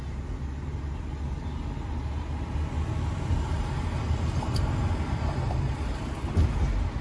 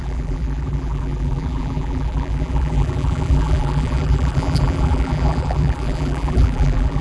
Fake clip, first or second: second